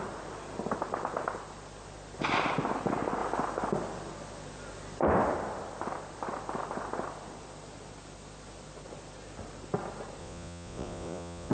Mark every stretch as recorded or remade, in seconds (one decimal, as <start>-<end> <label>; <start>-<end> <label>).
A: 0.0-10.2 recorded; 10.2-11.5 remade